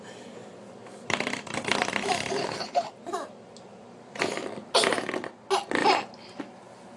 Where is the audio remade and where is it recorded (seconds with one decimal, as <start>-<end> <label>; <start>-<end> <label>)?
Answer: 0.0-2.4 recorded; 2.4-2.9 remade; 2.9-7.0 recorded